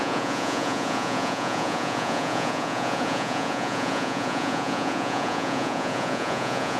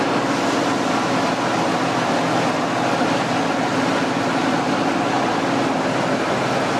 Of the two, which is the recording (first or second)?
second